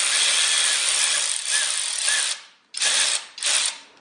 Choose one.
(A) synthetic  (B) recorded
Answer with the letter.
B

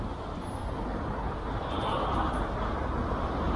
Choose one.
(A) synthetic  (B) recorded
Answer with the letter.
B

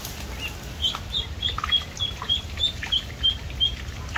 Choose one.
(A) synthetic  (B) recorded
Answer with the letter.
B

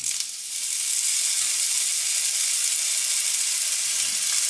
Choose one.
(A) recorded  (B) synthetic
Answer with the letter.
A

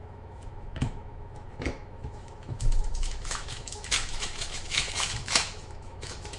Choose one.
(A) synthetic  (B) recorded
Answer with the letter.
A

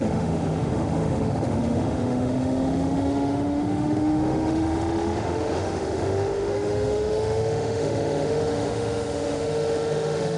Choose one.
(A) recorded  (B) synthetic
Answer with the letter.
B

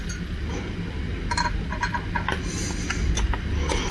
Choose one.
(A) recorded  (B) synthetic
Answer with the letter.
A